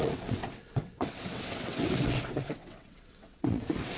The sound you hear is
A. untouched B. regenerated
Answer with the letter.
B